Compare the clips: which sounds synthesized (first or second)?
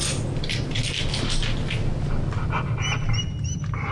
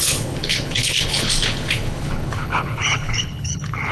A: second